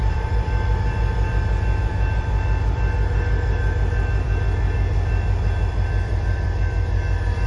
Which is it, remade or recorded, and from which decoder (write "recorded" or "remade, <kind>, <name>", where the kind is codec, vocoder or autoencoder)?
remade, vocoder, BigVGAN v2